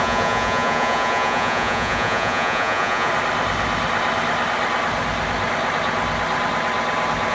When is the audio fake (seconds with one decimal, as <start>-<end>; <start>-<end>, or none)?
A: 0.0-3.1